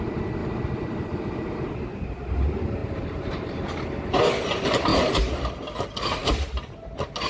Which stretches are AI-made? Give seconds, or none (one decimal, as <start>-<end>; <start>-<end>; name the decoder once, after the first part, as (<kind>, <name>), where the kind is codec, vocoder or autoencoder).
0.4-1.7 (vocoder, BigVGAN v2); 2.8-4.0; 4.9-5.5